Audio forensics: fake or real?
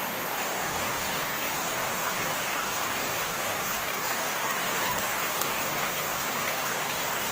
fake